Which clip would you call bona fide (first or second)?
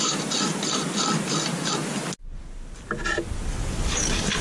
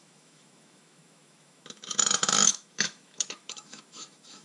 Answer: first